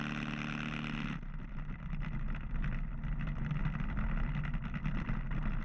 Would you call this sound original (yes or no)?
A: yes